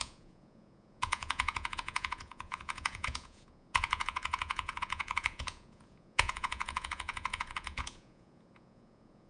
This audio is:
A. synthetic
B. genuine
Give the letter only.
A